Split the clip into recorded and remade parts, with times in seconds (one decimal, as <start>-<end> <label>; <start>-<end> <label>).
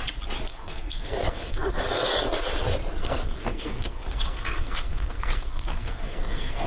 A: 0.0-0.5 recorded; 0.5-1.7 remade; 1.7-3.0 recorded; 3.0-6.7 remade